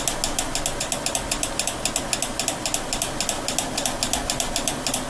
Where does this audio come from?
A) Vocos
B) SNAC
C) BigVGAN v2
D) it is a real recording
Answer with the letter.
D